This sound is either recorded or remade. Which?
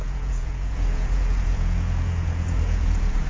remade